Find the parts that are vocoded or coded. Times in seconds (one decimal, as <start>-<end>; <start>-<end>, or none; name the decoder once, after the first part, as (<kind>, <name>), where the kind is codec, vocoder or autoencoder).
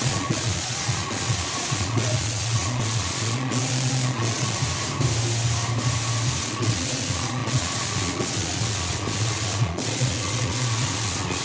0.0-4.6 (vocoder, Vocos); 6.4-11.4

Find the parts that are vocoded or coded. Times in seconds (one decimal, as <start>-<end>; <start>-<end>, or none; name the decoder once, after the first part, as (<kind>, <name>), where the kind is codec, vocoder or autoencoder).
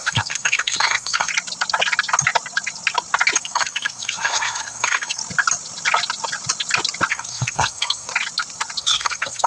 0.0-1.3 (codec, SNAC); 3.4-5.2; 7.1-8.1; 8.8-9.5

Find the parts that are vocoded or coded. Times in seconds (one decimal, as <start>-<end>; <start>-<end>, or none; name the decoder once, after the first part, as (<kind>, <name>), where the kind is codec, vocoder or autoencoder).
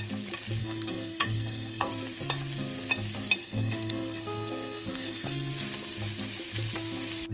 0.6-1.9 (codec, SNAC); 3.4-5.5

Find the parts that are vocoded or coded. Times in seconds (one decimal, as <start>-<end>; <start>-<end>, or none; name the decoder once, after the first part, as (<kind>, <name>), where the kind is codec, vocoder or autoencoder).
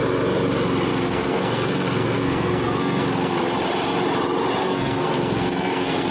0.9-3.4 (codec, SNAC); 4.6-6.1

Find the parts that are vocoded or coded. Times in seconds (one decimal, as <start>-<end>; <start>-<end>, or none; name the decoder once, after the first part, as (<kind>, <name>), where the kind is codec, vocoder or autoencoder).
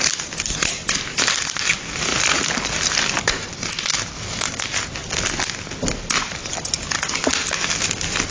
none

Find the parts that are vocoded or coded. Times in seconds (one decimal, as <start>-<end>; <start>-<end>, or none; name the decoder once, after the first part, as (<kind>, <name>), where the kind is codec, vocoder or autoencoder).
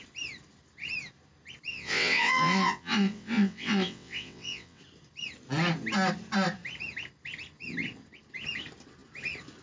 1.7-4.8 (vocoder, WaveNeXt)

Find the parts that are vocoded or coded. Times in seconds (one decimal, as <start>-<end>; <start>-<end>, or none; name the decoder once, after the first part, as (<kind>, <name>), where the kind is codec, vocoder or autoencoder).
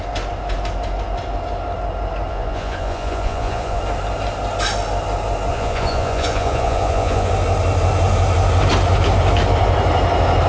2.3-3.8 (vocoder, Vocos); 5.5-7.3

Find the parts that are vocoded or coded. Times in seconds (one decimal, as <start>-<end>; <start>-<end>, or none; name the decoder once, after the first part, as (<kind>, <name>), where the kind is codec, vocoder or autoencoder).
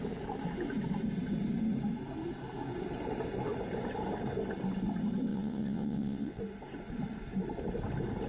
5.3-6.4 (vocoder, WaveNeXt)